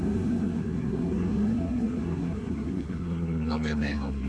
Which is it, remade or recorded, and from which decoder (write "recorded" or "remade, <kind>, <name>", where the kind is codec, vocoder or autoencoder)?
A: remade, codec, SNAC